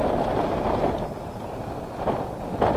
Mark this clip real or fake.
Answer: real